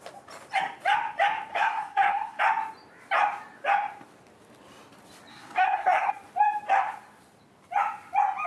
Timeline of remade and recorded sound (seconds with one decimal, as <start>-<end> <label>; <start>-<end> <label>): 0.0-1.5 recorded; 1.5-2.4 remade; 2.4-5.3 recorded; 5.3-6.1 remade; 6.1-8.5 recorded